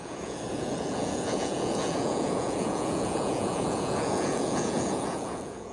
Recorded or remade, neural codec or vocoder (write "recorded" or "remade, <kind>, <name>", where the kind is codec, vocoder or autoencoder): remade, vocoder, Vocos